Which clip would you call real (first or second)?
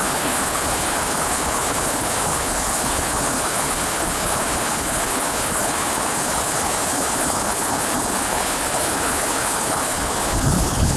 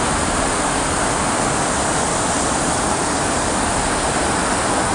second